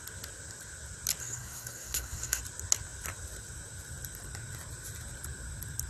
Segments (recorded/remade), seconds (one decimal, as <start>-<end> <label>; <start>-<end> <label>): 0.0-1.2 recorded; 1.2-2.4 remade; 2.4-5.9 recorded